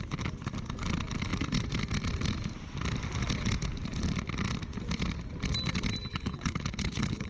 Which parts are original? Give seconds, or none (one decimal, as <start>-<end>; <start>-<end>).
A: 0.0-6.1